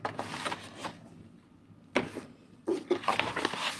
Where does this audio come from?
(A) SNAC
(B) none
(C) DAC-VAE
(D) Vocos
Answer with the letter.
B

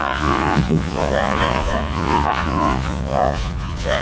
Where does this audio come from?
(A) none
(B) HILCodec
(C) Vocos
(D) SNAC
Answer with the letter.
C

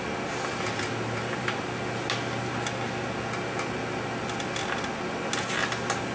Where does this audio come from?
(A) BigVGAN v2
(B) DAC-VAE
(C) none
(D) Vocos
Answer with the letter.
C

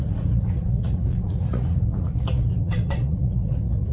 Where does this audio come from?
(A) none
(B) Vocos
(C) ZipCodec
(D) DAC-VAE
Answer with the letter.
B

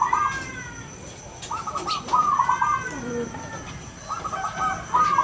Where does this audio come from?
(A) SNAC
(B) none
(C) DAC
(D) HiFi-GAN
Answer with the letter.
B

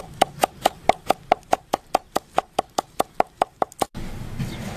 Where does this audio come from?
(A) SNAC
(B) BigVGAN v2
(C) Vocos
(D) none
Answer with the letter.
D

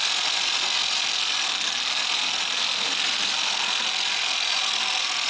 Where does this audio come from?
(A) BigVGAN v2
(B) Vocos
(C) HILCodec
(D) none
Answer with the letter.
D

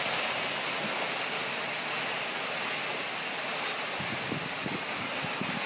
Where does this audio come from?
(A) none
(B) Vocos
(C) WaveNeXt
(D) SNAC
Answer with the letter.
A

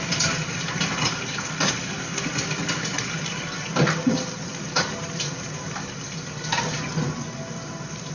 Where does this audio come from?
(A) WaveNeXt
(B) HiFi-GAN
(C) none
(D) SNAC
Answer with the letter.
C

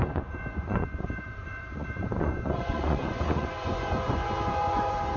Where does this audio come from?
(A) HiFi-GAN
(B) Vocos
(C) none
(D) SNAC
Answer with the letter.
B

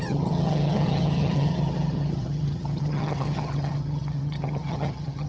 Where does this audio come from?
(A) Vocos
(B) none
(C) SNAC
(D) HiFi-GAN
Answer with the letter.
D